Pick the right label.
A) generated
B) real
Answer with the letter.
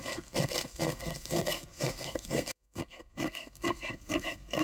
A